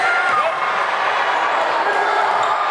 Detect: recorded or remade recorded